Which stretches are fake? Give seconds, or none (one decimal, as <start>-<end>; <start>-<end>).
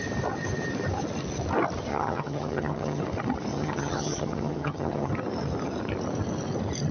1.9-3.0; 3.5-5.1